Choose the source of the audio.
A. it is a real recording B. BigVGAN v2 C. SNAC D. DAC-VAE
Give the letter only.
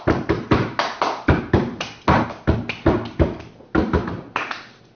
A